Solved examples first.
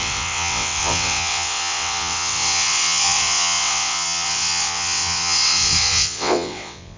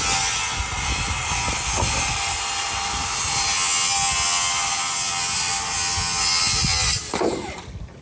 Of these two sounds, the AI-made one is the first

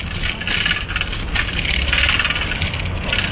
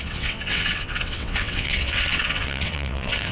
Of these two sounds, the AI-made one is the second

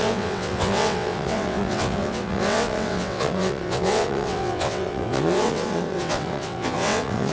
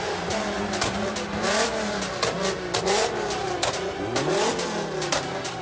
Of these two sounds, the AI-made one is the first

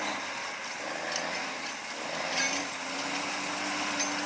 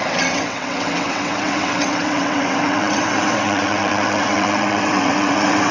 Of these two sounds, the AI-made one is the second